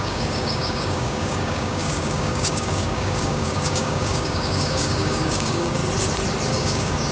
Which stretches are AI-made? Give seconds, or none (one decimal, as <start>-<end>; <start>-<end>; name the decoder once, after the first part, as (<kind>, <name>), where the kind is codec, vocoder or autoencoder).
0.0-5.8 (codec, DAC); 6.5-7.1